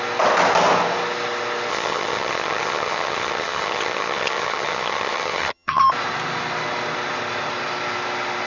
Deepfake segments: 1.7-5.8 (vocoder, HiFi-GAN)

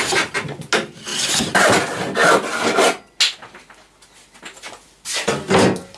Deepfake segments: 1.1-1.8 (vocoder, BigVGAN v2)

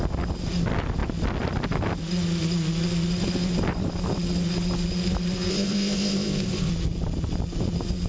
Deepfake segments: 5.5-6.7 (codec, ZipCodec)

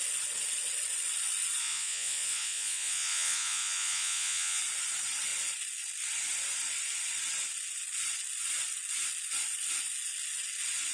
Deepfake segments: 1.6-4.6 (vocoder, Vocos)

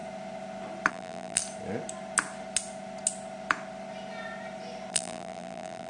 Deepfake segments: 0.9-1.4 (vocoder, BigVGAN v2); 4.9-5.9

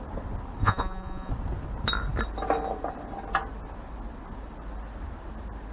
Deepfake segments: 0.6-1.3 (vocoder, Vocos)